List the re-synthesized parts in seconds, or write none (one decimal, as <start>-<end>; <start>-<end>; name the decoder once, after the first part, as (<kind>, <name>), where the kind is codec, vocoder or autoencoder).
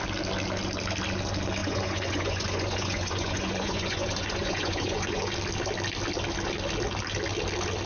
1.6-5.3 (vocoder, Vocos)